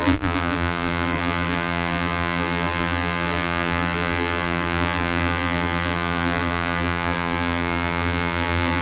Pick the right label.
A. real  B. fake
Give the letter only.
B